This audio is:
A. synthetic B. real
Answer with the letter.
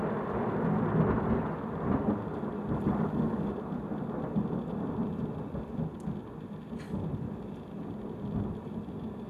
B